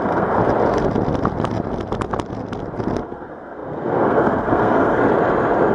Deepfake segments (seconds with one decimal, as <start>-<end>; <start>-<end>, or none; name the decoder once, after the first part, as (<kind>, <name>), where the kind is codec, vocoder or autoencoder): 0.0-0.4 (codec, SNAC); 3.0-5.0